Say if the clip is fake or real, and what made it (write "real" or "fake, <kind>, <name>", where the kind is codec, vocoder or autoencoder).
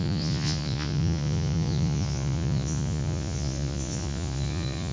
fake, vocoder, Vocos